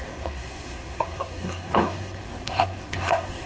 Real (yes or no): no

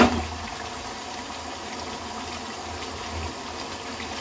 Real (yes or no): yes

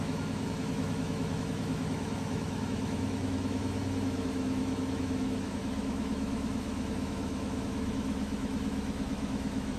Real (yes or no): no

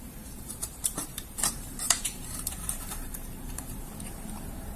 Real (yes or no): no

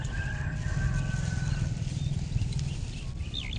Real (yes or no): yes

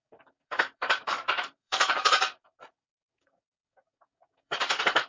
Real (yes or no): no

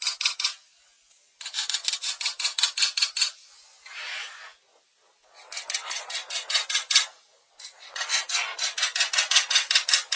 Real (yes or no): yes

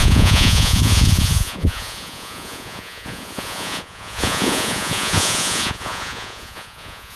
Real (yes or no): no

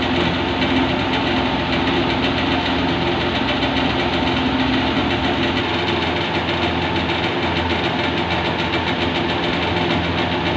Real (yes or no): yes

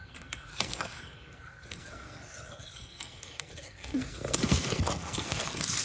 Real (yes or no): no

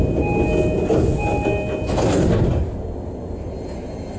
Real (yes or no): yes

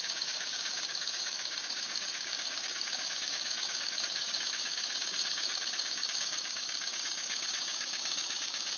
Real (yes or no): no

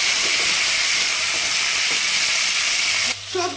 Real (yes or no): yes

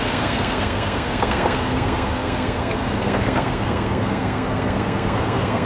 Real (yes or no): no